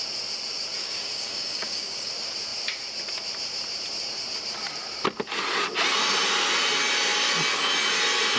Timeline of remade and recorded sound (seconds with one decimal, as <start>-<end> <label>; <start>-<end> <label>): 0.0-0.8 recorded; 0.8-2.1 remade; 2.1-8.4 recorded